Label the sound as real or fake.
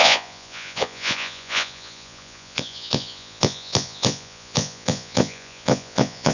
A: fake